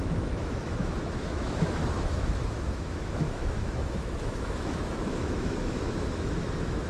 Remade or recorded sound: remade